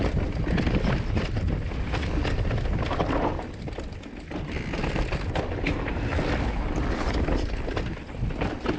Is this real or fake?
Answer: real